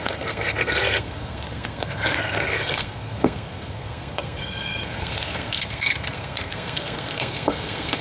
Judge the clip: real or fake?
fake